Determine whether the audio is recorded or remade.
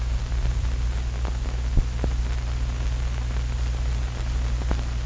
recorded